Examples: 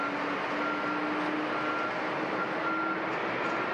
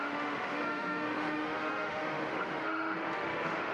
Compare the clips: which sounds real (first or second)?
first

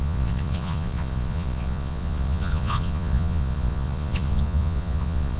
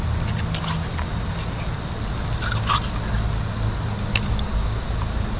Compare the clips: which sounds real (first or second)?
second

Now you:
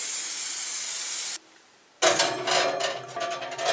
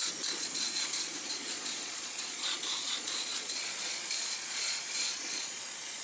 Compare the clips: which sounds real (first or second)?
first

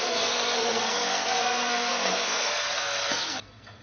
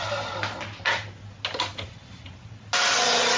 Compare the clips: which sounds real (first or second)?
second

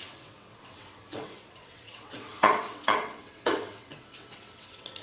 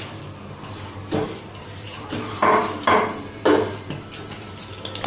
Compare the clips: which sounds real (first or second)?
second